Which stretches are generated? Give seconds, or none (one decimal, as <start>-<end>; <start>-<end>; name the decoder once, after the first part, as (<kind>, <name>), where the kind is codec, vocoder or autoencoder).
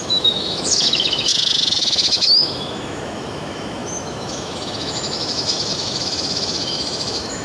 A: 0.0-7.4 (autoencoder, DAC-VAE)